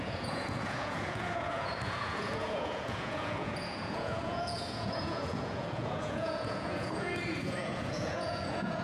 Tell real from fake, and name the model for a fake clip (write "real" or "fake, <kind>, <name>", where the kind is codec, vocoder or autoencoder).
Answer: fake, vocoder, Vocos